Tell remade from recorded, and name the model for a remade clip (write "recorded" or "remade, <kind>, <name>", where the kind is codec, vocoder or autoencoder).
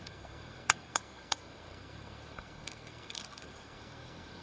remade, codec, SNAC